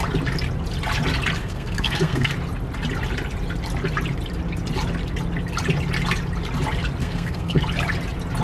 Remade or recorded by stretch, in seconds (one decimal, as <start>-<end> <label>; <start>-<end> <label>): 0.0-1.4 recorded; 1.4-2.3 remade; 2.3-7.0 recorded; 7.0-7.6 remade; 7.6-8.4 recorded